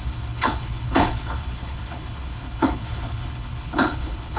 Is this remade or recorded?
remade